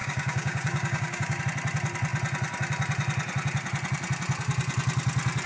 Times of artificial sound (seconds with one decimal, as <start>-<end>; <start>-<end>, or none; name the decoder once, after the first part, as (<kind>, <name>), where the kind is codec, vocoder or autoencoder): 0.0-1.4 (codec, DAC)